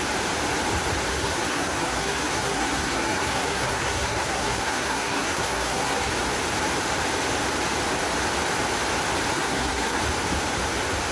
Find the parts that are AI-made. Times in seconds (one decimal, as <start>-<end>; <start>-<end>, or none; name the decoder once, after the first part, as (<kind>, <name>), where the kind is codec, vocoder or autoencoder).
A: 1.1-6.1 (codec, SNAC); 9.3-10.0